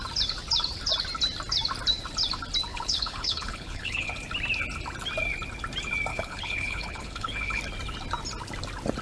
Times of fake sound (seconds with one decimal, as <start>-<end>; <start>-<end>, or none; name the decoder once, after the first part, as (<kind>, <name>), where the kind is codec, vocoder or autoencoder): 2.7-4.1 (codec, HILCodec); 6.1-7.6